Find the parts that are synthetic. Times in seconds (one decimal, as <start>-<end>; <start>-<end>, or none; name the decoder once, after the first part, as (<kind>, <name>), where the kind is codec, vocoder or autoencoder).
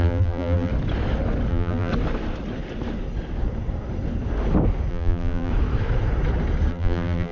0.0-0.7 (vocoder, BigVGAN v2); 1.5-1.9; 4.9-5.5; 6.7-7.3